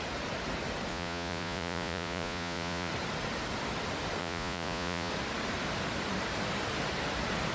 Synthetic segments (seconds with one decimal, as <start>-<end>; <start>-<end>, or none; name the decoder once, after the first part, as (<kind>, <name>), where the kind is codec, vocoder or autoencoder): 0.9-2.9 (vocoder, Vocos); 4.2-5.1